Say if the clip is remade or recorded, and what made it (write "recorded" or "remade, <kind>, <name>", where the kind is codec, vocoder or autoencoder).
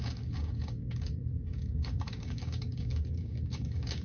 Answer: remade, codec, DAC